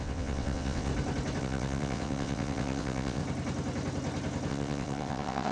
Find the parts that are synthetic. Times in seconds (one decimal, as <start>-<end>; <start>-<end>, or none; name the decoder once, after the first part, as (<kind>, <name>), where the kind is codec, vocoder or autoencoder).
0.0-0.9 (vocoder, WaveNeXt); 1.4-3.2; 4.5-5.5